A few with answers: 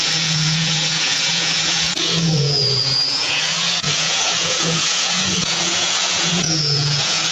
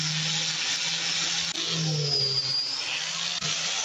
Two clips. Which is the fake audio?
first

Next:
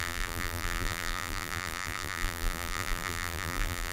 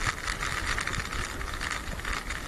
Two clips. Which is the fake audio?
first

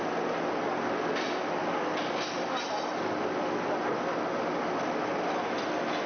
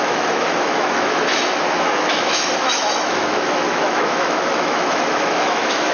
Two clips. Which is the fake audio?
second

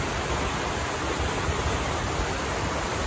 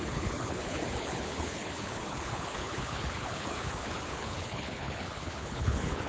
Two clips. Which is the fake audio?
second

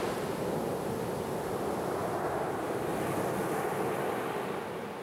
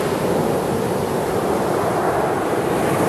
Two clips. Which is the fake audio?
second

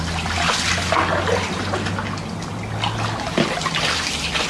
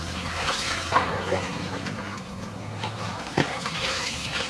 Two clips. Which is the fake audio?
second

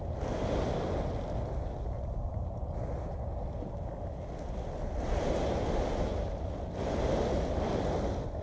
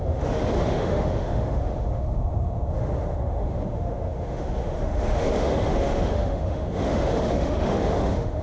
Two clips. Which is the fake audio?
second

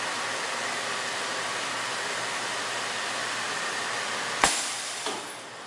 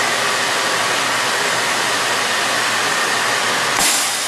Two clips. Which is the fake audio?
first